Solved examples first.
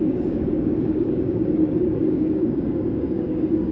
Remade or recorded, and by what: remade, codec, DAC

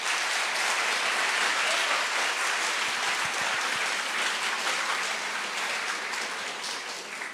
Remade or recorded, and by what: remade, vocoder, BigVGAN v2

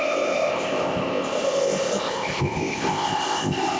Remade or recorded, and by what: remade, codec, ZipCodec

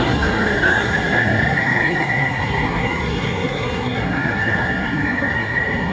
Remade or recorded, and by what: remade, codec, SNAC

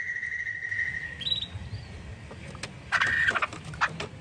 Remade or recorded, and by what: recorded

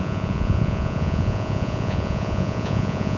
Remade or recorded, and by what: remade, vocoder, Vocos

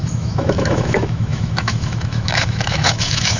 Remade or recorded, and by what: remade, autoencoder, DAC-VAE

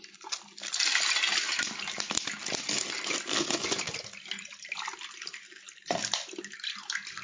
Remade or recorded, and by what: recorded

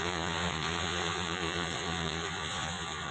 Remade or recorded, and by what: remade, vocoder, Vocos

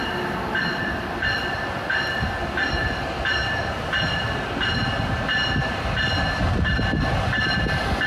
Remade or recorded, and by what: recorded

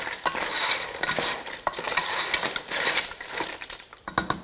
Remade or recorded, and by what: recorded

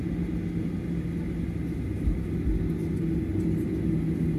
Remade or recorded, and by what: recorded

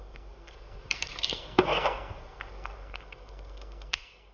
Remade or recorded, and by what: remade, codec, SNAC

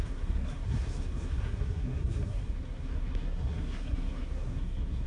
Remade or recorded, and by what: remade, codec, SNAC